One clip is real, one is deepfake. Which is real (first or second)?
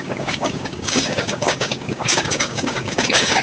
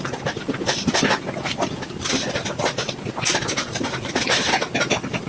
second